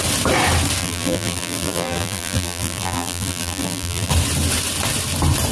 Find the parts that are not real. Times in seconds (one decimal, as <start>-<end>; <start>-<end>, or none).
0.8-4.1